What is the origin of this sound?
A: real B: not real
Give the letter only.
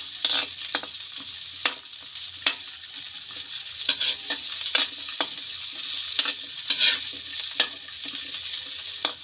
A